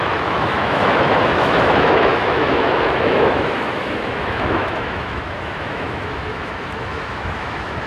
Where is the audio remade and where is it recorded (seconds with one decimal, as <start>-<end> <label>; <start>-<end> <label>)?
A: 0.0-7.9 remade